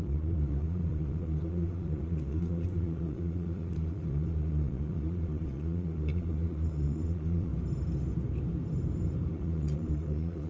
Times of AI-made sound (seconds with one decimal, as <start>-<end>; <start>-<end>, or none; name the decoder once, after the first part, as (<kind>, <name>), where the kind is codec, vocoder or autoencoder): 0.0-7.5 (vocoder, Vocos); 9.3-10.5